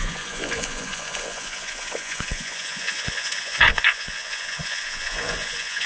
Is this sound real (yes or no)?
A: no